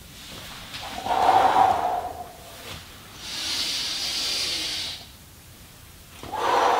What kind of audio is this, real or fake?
fake